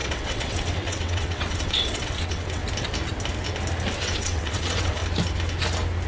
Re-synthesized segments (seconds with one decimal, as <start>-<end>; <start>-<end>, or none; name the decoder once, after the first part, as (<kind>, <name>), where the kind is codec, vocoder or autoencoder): 0.0-2.6 (vocoder, WaveNeXt); 4.0-5.0